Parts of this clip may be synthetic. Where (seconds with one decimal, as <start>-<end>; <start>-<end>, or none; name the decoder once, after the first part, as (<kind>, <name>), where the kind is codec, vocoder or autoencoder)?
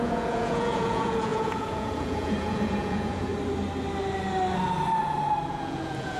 0.0-3.3 (vocoder, Vocos); 5.5-6.2